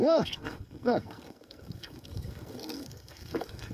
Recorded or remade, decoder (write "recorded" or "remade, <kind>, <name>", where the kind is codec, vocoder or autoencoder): remade, codec, SNAC